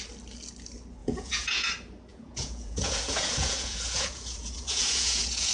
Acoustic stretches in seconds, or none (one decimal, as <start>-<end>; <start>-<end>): 0.0-1.0; 1.7-2.1